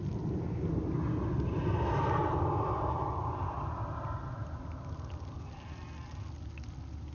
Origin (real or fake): real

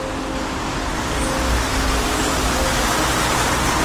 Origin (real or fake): real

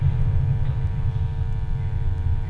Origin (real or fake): real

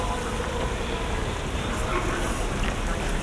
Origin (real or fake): real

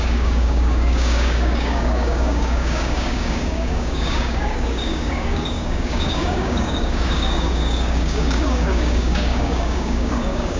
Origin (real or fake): fake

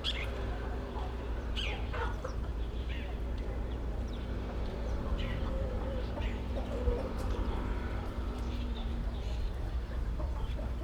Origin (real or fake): fake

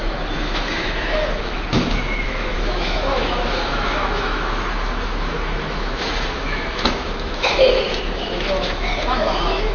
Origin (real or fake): fake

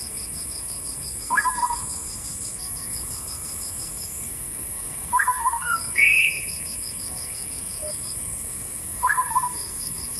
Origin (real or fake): fake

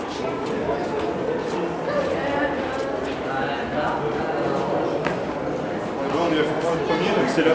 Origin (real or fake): real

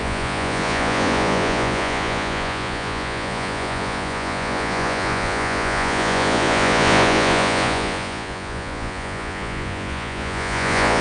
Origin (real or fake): fake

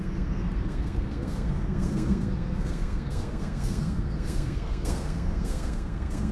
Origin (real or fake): fake